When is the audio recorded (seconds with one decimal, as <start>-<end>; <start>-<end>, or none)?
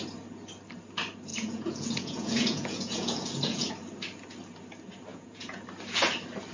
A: 0.0-1.3; 3.7-5.1; 5.6-6.5